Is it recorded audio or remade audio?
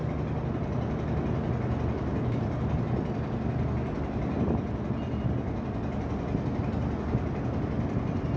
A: recorded